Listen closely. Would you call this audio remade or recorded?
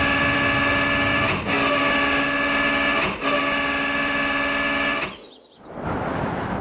recorded